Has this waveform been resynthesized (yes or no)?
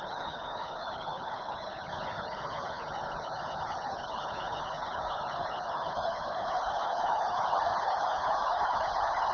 yes